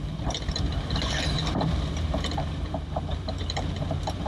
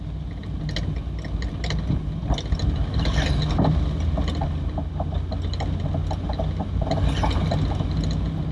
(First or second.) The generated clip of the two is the first